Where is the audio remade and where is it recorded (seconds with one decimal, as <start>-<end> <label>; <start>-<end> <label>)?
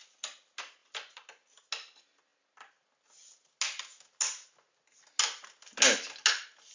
0.0-6.7 recorded